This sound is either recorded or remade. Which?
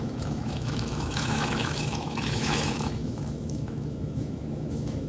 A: remade